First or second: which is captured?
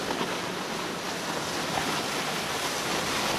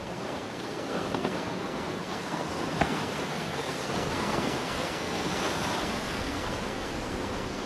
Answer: first